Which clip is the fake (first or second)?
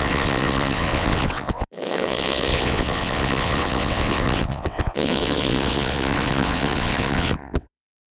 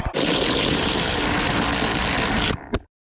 first